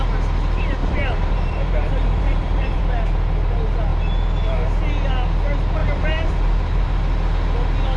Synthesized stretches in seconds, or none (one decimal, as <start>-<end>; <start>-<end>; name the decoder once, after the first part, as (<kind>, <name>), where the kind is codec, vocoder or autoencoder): 0.8-2.8 (vocoder, BigVGAN v2); 5.8-6.3